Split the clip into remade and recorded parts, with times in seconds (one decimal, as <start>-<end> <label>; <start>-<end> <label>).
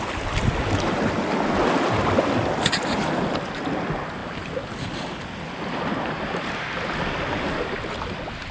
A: 0.0-5.9 recorded; 5.9-6.5 remade; 6.5-8.5 recorded